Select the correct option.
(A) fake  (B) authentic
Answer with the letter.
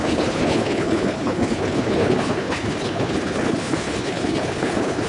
A